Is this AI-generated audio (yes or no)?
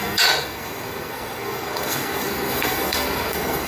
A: yes